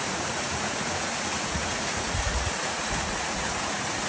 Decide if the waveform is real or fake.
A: fake